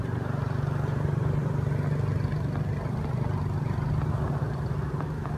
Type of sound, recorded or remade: recorded